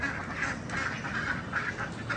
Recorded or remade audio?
recorded